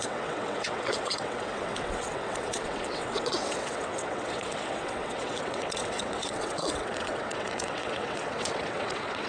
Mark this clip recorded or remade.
remade